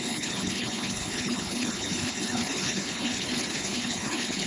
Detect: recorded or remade remade